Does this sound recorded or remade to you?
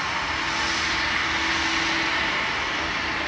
recorded